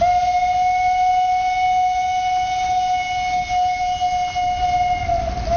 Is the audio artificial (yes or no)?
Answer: no